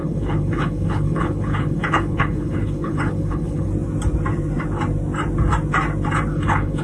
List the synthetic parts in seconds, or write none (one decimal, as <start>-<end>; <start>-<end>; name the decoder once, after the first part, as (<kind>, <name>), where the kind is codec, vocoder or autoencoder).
0.0-3.7 (codec, HILCodec); 6.3-6.8